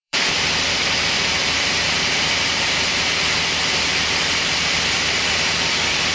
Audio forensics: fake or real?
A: fake